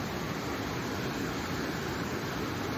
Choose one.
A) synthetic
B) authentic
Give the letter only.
B